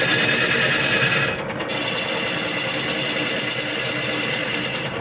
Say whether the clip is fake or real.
real